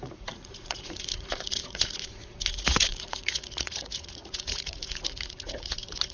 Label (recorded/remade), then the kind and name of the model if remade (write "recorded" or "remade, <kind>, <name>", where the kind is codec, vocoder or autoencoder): remade, vocoder, Vocos